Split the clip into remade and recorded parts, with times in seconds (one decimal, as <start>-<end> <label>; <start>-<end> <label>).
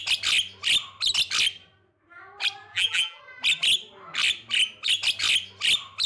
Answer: 0.0-2.7 recorded; 2.7-3.2 remade; 3.2-6.1 recorded